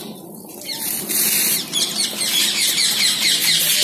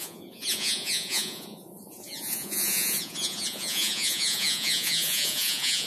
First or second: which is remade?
second